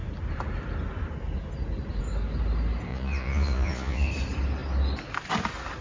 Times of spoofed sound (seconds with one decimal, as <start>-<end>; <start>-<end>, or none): 2.9-4.1